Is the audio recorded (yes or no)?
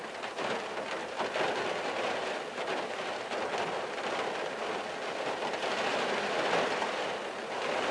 yes